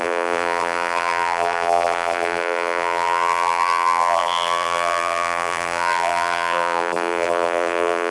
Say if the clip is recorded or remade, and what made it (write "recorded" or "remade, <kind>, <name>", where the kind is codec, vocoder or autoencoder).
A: remade, vocoder, BigVGAN v2